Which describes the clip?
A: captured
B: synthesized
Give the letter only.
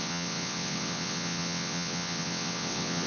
B